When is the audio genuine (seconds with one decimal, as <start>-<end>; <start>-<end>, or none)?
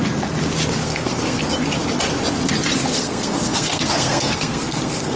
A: 0.0-0.8; 1.4-2.9